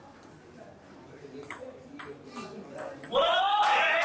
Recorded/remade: recorded